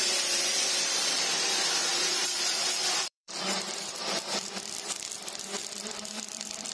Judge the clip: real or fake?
fake